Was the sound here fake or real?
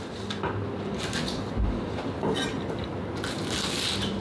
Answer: real